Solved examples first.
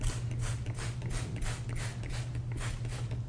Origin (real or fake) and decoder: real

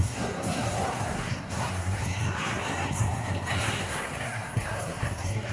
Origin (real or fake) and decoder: fake, codec, SNAC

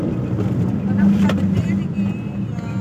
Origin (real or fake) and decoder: real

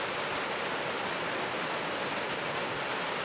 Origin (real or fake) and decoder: real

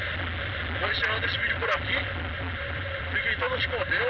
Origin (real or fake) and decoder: real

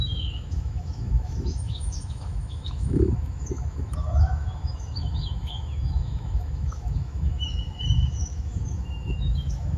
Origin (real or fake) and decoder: fake, autoencoder, DAC-VAE